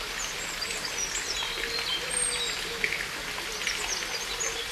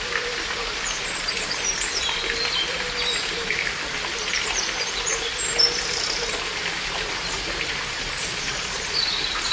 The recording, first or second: first